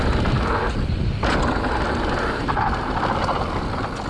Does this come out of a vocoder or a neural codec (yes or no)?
no